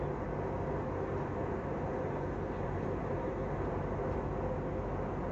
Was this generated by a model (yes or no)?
no